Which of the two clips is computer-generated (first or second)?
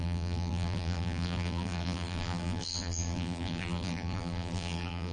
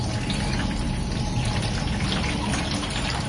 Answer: first